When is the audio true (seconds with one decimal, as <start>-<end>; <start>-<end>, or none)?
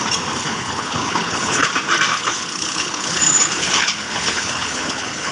0.0-0.4; 1.7-2.1